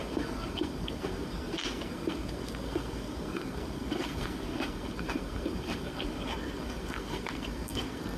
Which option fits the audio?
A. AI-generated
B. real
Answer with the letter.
A